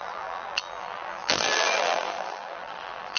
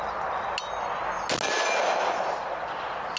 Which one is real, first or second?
second